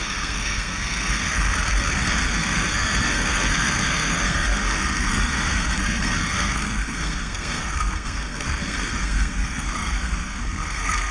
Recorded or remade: remade